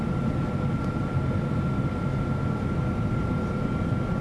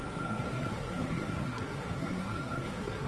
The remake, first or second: second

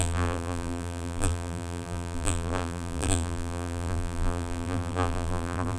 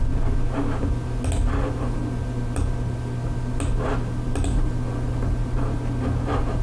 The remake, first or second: first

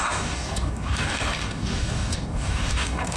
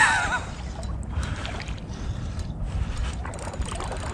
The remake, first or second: first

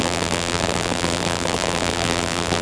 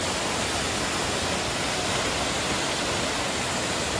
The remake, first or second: first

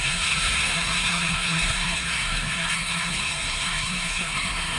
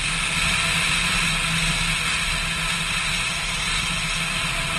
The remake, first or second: first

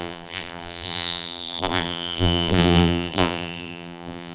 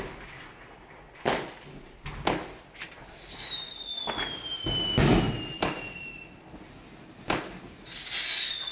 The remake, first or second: first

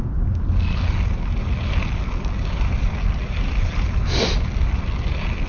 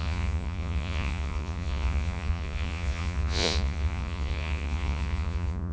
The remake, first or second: second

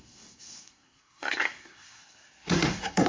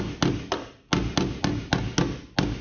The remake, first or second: first